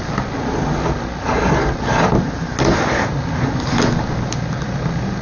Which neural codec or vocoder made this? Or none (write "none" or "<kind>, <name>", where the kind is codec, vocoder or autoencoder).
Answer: none